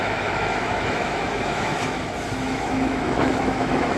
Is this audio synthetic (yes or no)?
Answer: yes